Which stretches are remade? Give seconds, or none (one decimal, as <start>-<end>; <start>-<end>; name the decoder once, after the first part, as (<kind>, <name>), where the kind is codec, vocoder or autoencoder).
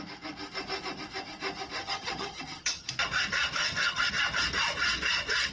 1.8-2.9 (vocoder, HiFi-GAN); 3.6-4.1